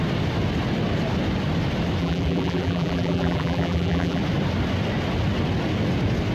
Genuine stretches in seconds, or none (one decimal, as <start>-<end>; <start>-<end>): 0.0-2.0; 4.2-6.3